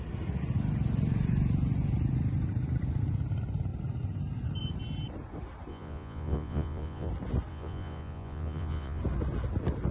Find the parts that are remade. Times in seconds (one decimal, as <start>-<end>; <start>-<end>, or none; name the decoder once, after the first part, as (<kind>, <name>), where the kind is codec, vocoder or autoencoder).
5.7-7.1 (vocoder, Vocos); 7.5-9.0